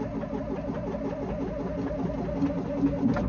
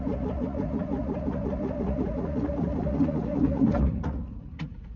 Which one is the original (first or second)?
first